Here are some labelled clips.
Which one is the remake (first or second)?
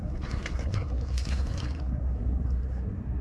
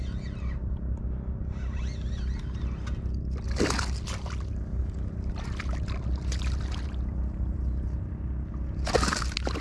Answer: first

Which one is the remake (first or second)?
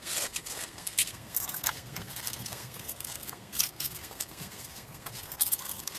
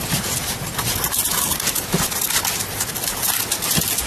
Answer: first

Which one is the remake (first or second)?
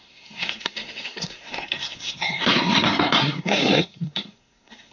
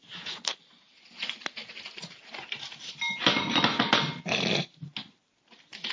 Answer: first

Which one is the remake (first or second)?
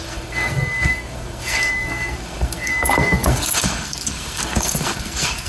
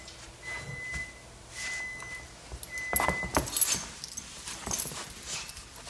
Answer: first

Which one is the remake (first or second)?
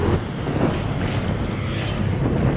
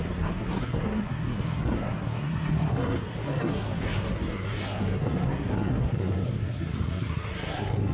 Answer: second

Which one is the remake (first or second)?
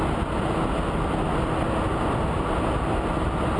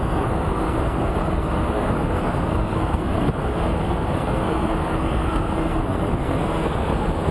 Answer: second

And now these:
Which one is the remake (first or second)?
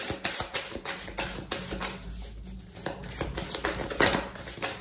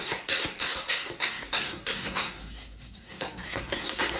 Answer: second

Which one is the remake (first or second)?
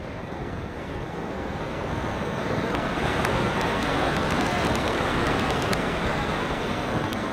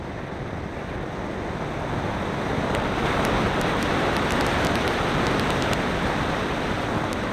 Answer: first